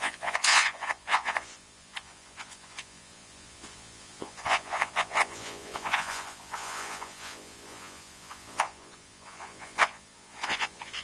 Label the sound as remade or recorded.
remade